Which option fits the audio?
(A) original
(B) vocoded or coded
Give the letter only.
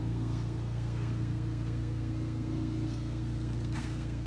B